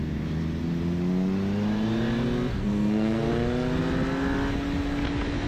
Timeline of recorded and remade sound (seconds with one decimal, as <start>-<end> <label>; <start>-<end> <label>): 0.0-2.5 recorded; 2.5-3.3 remade; 3.3-5.5 recorded